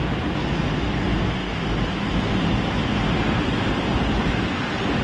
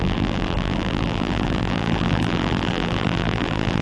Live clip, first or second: first